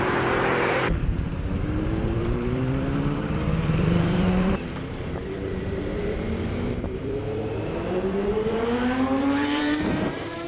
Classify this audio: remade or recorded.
remade